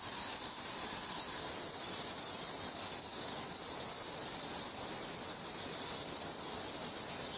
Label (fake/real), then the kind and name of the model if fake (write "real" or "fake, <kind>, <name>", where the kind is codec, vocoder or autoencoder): real